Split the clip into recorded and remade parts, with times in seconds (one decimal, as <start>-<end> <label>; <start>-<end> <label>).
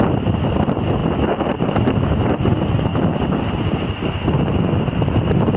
0.0-5.6 recorded